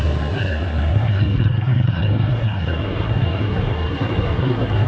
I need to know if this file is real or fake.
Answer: fake